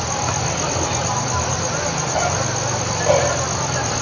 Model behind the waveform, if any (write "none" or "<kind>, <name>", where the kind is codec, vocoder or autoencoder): none